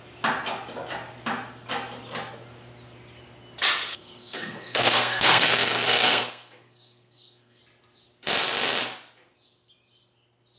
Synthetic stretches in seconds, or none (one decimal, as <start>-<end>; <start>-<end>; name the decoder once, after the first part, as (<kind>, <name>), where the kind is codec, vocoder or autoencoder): 3.9-7.6 (codec, SNAC)